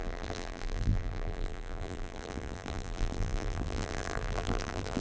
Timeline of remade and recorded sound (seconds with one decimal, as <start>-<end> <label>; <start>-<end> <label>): 0.0-5.0 remade